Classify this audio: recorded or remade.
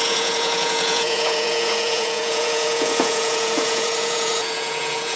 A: remade